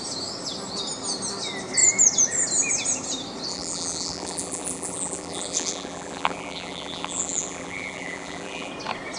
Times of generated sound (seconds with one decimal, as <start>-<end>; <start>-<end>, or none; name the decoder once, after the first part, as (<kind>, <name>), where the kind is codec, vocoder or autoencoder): 3.5-8.7 (vocoder, BigVGAN v2)

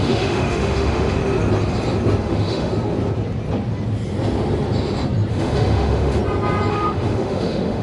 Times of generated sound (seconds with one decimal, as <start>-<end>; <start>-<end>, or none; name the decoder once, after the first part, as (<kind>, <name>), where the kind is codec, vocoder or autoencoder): 0.0-1.2 (autoencoder, DAC-VAE); 2.2-2.7; 5.3-6.2; 6.7-7.8